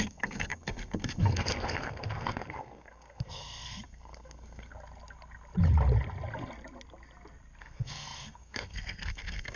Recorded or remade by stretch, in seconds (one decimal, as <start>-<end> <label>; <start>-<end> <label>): 0.0-4.7 remade; 4.7-7.6 recorded; 7.6-9.6 remade